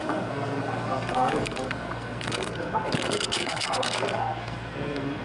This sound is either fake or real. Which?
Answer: fake